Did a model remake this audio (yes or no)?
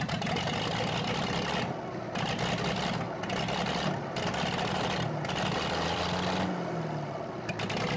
no